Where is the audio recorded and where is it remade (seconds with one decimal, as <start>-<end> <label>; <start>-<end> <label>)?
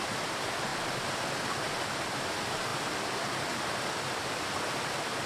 0.0-5.3 recorded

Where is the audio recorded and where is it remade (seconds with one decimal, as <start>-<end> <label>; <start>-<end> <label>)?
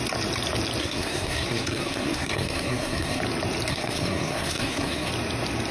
0.0-0.8 recorded; 0.8-3.2 remade; 3.2-3.7 recorded; 3.7-5.1 remade; 5.1-5.7 recorded